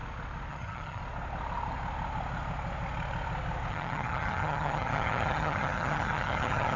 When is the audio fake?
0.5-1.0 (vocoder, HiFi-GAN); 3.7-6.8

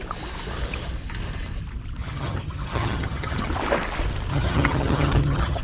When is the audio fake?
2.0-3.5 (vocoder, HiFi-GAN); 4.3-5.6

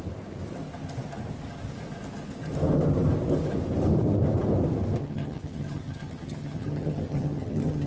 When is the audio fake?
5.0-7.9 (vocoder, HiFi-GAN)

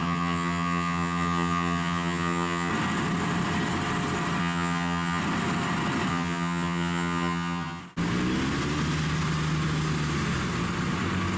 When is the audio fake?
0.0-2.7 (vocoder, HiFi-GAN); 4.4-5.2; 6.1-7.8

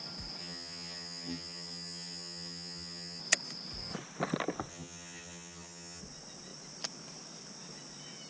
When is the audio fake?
0.4-3.2 (vocoder, HiFi-GAN); 4.7-6.0

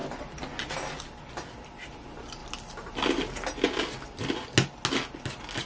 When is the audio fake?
none

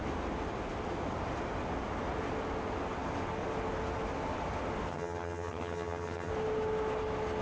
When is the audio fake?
4.9-6.3 (vocoder, HiFi-GAN)

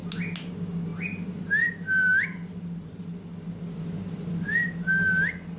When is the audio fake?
none